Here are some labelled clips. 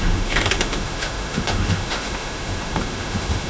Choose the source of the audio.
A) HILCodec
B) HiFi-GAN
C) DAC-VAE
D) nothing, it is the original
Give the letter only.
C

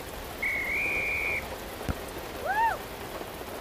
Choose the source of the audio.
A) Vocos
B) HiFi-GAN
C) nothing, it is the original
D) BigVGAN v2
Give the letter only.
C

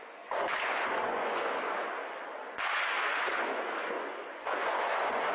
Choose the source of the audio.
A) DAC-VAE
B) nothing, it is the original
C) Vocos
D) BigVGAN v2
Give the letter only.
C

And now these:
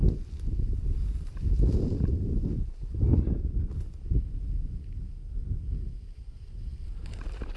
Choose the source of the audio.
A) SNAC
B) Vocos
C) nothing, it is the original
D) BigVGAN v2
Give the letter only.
C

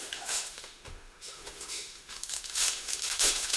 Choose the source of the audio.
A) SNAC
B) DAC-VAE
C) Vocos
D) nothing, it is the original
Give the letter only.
B